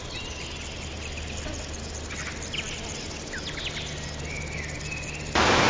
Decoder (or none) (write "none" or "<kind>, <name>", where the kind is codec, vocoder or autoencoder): none